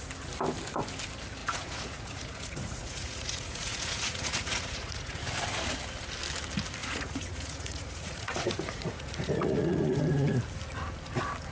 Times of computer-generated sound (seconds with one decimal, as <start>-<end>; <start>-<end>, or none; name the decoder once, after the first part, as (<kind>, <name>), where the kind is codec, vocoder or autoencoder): 1.4-5.2 (vocoder, Vocos); 6.8-10.0